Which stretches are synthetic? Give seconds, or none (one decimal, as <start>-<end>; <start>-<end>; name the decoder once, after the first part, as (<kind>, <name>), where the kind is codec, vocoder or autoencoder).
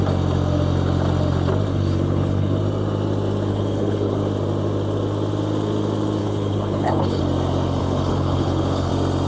1.7-2.6 (codec, HILCodec); 3.5-4.2; 6.2-7.2; 7.8-8.9